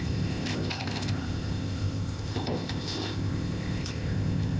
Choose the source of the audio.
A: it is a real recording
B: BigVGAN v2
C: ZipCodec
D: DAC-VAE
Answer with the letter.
C